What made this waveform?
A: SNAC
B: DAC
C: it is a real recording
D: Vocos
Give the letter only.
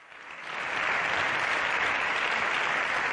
C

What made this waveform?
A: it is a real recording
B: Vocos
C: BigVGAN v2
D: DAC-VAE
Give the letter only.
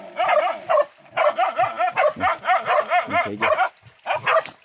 A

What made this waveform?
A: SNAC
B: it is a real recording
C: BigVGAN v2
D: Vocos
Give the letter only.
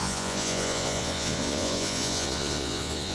D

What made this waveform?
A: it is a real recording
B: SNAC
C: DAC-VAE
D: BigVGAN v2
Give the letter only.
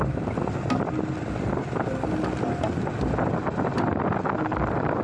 A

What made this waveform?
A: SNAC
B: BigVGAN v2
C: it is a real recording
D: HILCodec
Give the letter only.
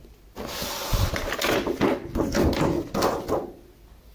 C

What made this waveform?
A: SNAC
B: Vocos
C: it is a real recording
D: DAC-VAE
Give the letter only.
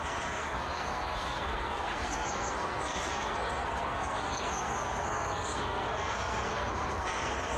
A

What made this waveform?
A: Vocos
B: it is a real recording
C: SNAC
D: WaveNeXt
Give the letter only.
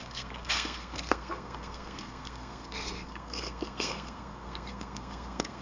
C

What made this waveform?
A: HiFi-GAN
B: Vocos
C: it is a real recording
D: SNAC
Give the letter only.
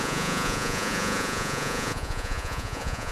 B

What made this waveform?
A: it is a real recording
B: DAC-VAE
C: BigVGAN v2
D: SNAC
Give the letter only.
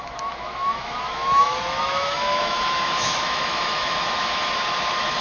B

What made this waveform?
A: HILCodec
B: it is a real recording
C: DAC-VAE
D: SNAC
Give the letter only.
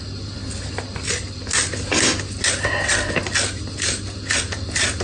B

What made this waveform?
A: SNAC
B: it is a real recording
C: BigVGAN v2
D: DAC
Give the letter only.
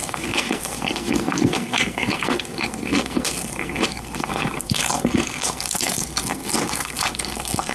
A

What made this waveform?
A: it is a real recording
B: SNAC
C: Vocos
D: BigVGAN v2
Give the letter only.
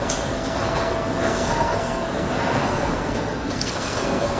B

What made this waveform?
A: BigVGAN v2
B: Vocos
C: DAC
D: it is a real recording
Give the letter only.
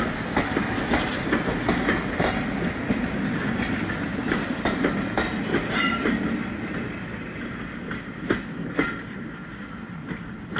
D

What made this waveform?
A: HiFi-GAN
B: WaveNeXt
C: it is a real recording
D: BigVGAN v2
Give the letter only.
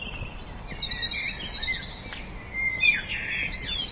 C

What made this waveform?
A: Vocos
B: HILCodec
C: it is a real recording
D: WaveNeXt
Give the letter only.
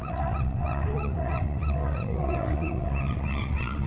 D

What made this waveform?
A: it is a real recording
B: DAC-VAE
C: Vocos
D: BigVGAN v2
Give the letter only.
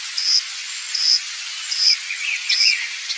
C